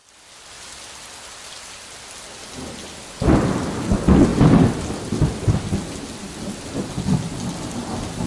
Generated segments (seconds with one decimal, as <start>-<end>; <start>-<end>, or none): none